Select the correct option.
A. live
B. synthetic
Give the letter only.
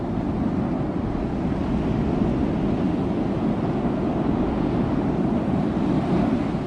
A